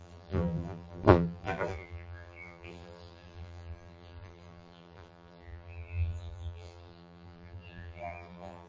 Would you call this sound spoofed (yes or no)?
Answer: yes